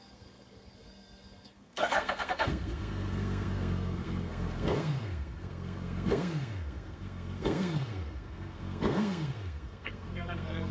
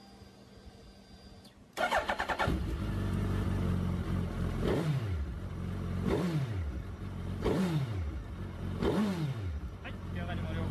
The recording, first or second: second